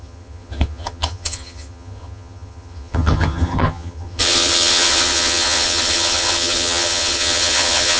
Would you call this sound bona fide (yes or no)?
no